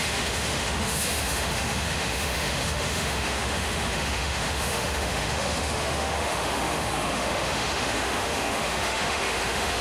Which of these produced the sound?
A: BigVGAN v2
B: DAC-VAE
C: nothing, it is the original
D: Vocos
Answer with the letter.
B